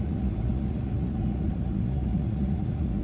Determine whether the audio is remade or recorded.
remade